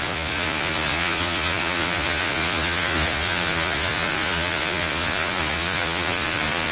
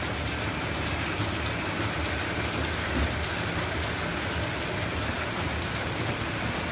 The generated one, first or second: first